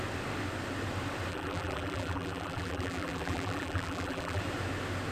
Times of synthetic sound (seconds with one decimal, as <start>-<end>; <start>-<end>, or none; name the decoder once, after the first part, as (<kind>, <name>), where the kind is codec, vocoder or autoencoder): 1.3-4.4 (vocoder, BigVGAN v2)